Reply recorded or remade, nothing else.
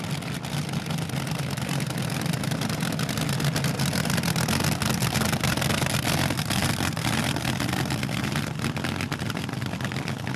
recorded